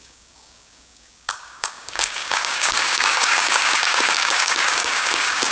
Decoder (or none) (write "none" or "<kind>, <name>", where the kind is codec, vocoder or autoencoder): codec, DAC